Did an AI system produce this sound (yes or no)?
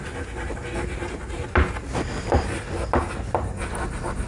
no